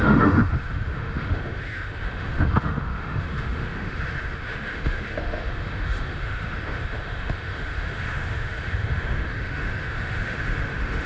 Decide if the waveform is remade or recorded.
remade